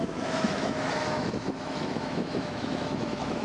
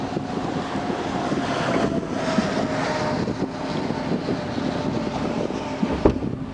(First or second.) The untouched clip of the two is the second